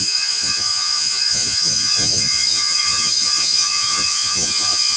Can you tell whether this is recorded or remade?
remade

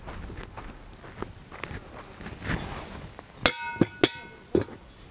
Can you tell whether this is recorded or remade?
recorded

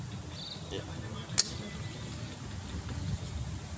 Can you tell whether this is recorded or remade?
recorded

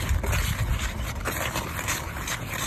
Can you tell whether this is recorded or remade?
recorded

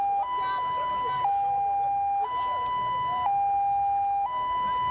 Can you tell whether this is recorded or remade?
recorded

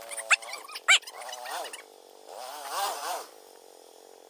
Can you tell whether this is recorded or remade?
recorded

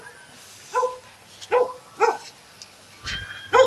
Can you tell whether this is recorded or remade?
recorded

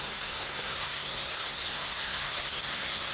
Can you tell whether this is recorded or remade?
remade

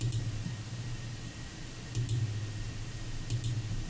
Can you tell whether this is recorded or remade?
recorded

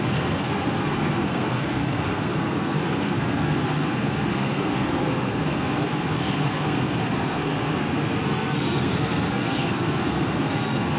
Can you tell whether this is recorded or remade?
remade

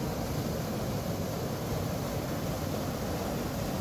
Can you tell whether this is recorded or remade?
recorded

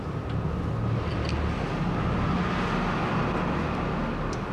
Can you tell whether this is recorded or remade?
recorded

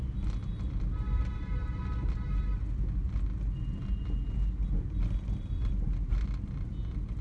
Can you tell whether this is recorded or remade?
recorded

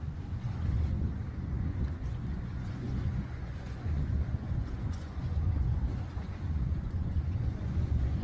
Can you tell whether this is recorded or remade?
remade